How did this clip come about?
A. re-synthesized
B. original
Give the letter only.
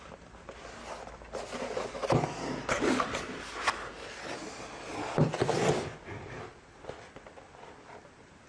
B